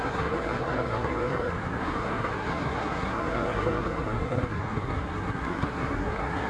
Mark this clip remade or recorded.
remade